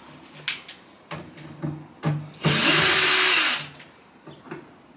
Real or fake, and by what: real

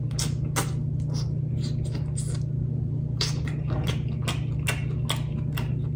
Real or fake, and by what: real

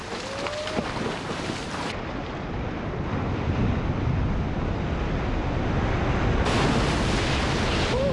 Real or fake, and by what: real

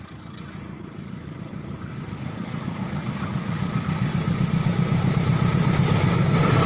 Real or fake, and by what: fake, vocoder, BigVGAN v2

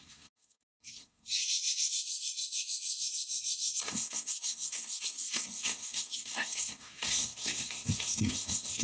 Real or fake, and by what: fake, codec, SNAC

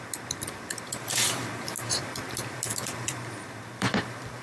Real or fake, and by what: fake, vocoder, BigVGAN v2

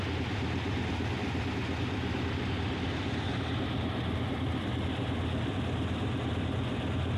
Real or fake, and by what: real